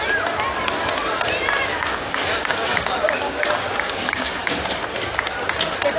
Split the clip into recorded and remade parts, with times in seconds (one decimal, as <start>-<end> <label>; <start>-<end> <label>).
0.0-1.7 recorded; 1.7-4.6 remade; 4.6-6.0 recorded